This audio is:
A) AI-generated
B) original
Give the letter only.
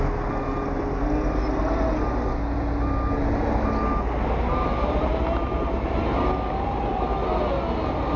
B